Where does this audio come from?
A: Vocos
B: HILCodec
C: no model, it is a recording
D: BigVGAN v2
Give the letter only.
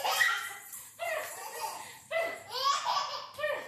D